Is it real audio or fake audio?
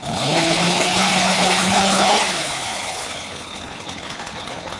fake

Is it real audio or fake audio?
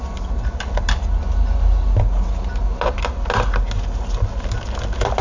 real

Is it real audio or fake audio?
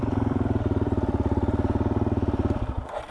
fake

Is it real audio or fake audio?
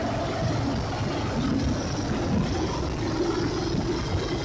real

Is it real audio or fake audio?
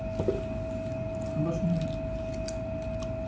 real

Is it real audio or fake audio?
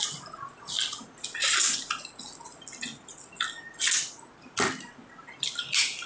real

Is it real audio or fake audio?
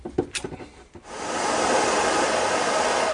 real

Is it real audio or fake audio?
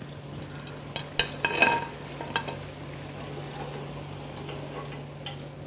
real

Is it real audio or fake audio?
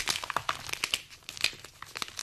real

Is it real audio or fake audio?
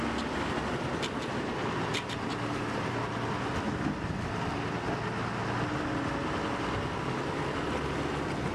real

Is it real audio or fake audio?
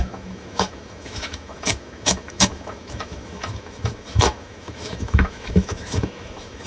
fake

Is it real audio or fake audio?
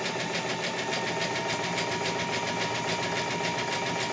real